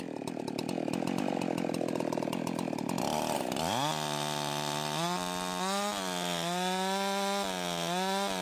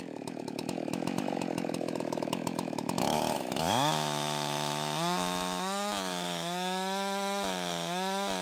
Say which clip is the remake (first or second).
second